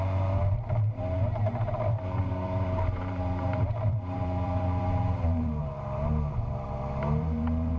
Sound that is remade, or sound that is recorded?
remade